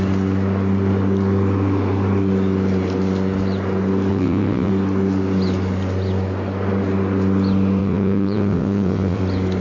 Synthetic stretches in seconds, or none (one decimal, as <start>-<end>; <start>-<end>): 4.1-4.7; 7.8-9.2

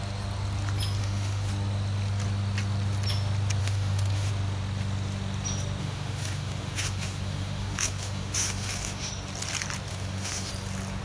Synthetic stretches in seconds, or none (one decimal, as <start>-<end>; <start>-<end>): 1.0-1.5; 3.6-4.3; 5.8-9.1; 9.9-10.5

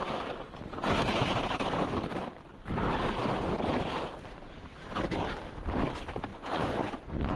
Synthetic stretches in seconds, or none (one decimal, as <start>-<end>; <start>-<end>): 6.3-7.4

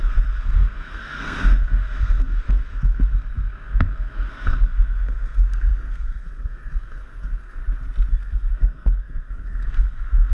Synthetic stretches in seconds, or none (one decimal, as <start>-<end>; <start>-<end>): 0.0-7.6; 8.1-10.3

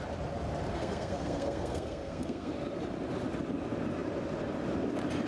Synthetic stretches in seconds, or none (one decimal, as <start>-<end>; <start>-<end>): 0.7-2.5

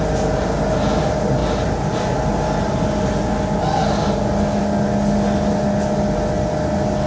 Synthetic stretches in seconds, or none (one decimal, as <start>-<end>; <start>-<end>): none